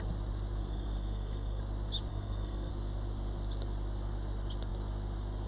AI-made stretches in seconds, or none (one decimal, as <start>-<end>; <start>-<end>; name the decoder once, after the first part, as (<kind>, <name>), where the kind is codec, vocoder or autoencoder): 0.6-1.6 (codec, SNAC); 2.1-2.7

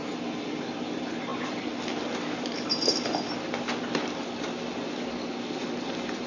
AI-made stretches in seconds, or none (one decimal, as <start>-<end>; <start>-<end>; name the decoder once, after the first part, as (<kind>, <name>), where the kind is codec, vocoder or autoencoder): none

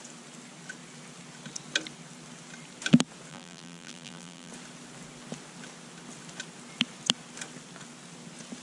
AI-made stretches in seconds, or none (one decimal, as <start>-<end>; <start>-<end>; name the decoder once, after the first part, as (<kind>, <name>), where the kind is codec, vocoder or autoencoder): 3.3-4.5 (vocoder, BigVGAN v2)

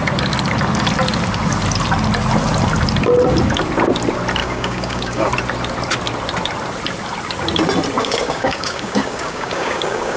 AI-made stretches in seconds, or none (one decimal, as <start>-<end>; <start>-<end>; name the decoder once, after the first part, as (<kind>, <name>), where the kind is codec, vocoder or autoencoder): 4.4-5.3 (codec, DAC); 8.0-10.2

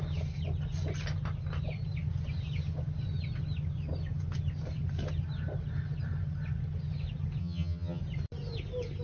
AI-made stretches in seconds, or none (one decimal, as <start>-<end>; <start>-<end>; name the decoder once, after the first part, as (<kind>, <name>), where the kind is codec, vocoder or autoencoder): 7.4-8.0 (vocoder, HiFi-GAN)